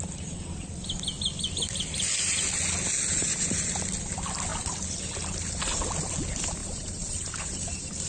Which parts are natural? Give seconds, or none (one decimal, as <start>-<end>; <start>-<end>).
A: 0.0-3.1; 3.8-6.6